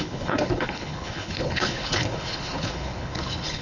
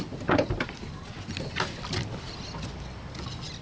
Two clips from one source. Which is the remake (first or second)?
first